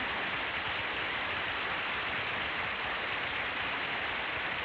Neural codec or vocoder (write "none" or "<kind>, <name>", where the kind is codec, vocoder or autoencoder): none